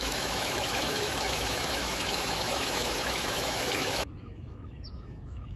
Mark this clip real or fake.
fake